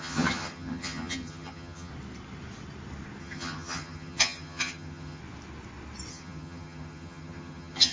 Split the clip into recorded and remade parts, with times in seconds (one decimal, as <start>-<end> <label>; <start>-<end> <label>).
0.0-1.9 remade; 1.9-3.2 recorded; 3.2-5.2 remade; 5.2-6.1 recorded; 6.1-7.9 remade